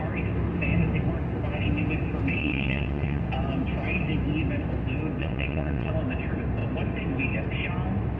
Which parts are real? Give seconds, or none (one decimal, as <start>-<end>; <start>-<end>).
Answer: 0.0-2.4; 3.2-5.2; 5.9-8.2